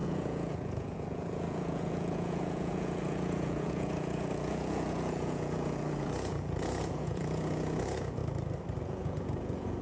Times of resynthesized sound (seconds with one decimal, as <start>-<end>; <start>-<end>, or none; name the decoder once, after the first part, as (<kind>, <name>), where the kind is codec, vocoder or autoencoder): 0.0-8.2 (vocoder, Vocos); 8.8-9.8